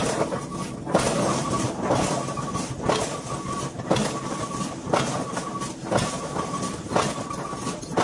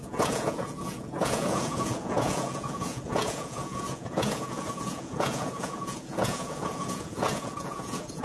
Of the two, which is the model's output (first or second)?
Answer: second